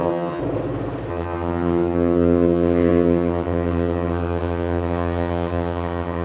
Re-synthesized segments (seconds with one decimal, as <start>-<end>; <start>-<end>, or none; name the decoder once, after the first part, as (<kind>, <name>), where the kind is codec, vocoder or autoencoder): 0.0-0.4 (vocoder, HiFi-GAN); 1.1-6.2